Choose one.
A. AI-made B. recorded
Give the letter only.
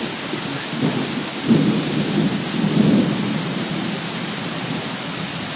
B